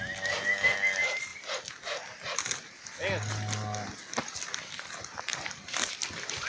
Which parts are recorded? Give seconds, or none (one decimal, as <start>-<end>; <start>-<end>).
1.3-5.2